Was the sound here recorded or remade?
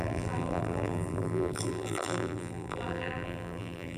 remade